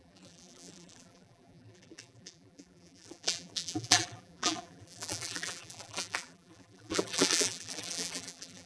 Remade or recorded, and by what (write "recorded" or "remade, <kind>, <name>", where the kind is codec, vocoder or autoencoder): remade, vocoder, BigVGAN v2